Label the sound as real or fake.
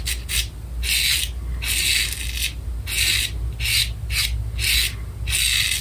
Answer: real